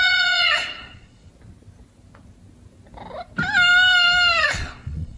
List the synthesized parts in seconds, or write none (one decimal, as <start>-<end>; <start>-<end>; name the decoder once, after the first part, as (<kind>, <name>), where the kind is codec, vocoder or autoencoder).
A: 0.0-1.3 (vocoder, Vocos); 4.4-5.2